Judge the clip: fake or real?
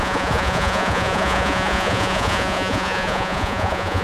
fake